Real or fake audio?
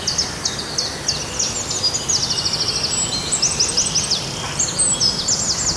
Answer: real